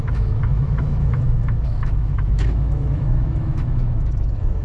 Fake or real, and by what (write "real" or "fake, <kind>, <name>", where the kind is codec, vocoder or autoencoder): fake, autoencoder, DAC-VAE